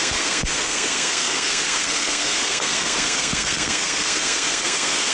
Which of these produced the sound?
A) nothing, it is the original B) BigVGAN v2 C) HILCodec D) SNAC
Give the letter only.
D